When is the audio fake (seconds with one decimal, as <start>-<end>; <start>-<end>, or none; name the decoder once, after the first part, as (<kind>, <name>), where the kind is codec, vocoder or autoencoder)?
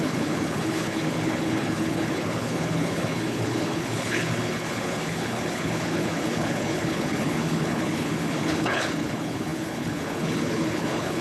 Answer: 0.0-11.2 (codec, HILCodec)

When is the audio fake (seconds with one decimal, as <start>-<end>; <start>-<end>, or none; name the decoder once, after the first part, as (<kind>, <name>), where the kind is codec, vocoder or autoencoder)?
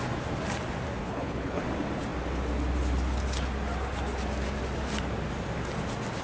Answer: 1.0-1.6 (codec, HILCodec)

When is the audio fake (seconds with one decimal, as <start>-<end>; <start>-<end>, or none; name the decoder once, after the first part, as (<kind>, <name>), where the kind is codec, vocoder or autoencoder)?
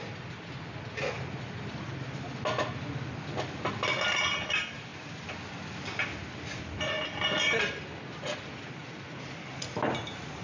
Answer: none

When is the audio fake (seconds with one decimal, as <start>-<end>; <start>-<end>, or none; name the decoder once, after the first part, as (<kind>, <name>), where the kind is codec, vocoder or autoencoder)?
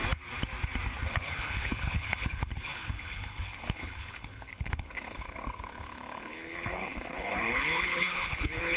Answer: 1.1-8.8 (codec, HILCodec)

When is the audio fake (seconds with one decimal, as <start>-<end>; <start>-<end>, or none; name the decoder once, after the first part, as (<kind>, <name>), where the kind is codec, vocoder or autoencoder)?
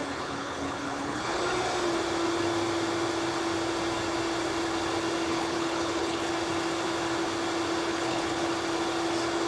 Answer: 0.0-1.4 (codec, HILCodec); 5.3-6.3; 7.9-8.5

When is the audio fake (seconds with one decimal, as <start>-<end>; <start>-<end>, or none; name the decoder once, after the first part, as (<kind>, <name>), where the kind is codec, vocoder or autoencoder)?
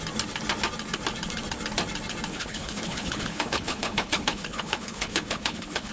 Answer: 2.3-5.9 (codec, HILCodec)